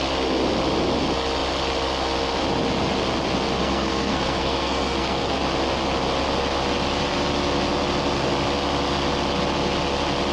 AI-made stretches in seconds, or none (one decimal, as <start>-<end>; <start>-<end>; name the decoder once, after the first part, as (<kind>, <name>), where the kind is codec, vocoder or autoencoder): 3.6-5.4 (codec, SNAC)